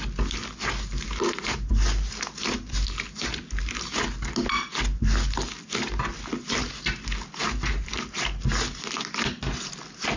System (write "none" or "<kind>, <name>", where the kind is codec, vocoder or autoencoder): none